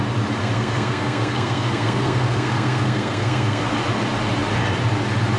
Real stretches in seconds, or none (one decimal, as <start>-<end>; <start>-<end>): 0.0-0.4; 3.6-5.4

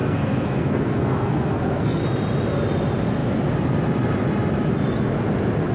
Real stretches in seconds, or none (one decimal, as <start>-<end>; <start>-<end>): 2.0-5.7

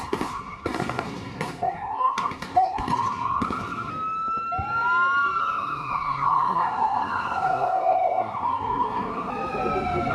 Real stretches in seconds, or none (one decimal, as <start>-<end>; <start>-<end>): 3.9-5.4; 9.3-10.1